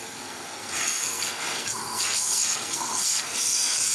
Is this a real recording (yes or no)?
no